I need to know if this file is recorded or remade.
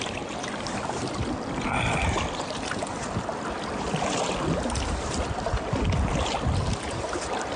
recorded